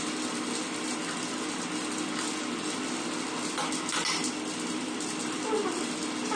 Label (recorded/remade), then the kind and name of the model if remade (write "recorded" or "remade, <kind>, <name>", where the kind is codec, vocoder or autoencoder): recorded